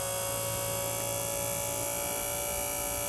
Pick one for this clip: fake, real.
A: real